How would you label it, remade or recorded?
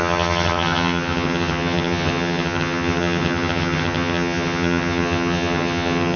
remade